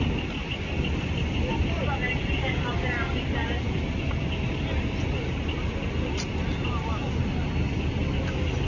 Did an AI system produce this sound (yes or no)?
no